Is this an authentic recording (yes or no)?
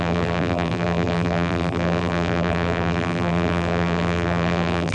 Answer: no